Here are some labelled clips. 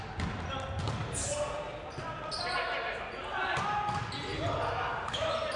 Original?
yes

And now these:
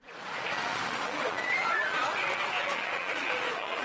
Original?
no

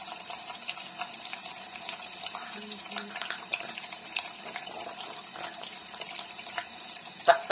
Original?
no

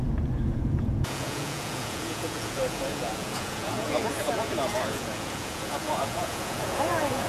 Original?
no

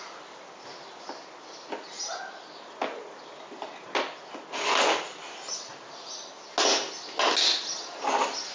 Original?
yes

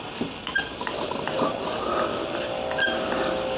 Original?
yes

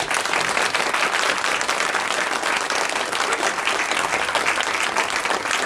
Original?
yes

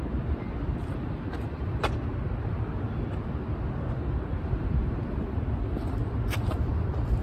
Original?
yes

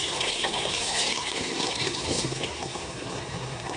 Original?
no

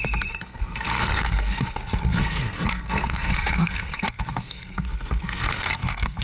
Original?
no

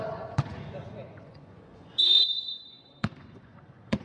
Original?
no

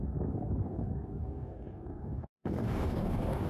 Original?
no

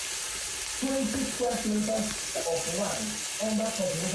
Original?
yes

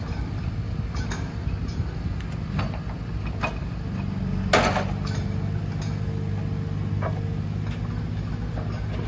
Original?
yes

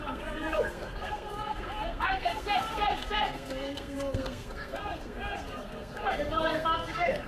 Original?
no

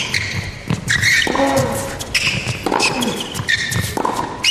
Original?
yes